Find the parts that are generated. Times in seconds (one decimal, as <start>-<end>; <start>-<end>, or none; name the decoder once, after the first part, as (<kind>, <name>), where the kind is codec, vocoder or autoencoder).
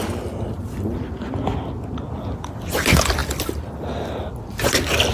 3.2-4.4 (vocoder, BigVGAN v2)